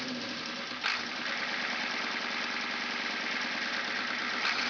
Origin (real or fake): real